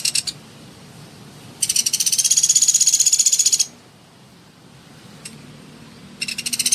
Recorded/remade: recorded